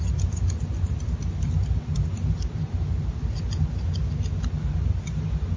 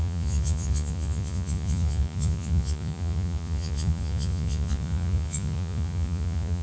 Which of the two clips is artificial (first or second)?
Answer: second